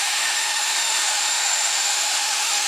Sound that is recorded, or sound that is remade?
remade